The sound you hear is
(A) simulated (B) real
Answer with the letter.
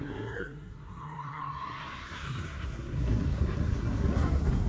A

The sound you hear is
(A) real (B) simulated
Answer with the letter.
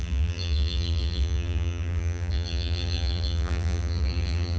B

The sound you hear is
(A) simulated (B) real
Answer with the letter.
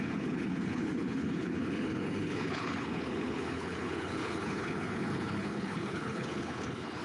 A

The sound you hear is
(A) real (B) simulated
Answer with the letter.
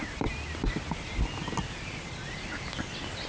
A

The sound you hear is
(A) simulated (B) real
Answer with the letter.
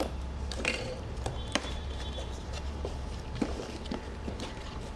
A